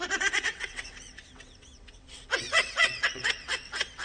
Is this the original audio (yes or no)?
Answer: no